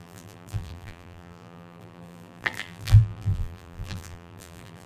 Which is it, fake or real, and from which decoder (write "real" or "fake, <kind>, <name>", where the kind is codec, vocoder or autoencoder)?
fake, vocoder, BigVGAN v2